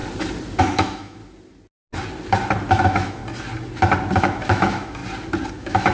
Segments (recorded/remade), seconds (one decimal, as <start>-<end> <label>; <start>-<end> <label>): 0.0-0.6 recorded; 0.6-1.2 remade; 1.2-2.7 recorded; 2.7-3.2 remade; 3.2-4.2 recorded; 4.2-5.0 remade; 5.0-5.5 recorded; 5.5-5.9 remade

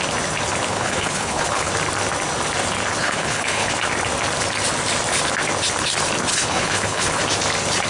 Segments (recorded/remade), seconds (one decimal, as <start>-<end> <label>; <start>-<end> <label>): 0.0-0.7 recorded; 0.7-1.7 remade; 1.7-3.0 recorded; 3.0-3.7 remade; 3.7-6.3 recorded; 6.3-7.2 remade; 7.2-7.9 recorded

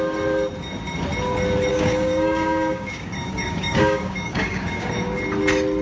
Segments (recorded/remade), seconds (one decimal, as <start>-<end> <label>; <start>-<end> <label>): 0.0-1.7 recorded; 1.7-5.2 remade; 5.2-5.8 recorded

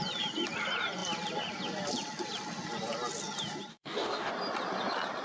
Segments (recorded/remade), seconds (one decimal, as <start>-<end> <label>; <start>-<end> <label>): 0.0-3.7 recorded; 3.7-4.3 remade; 4.3-5.2 recorded